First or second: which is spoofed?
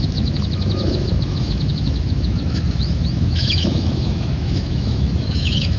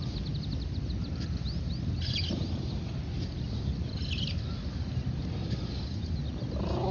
first